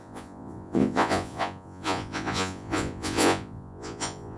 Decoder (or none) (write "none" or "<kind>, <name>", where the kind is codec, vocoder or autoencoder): vocoder, Vocos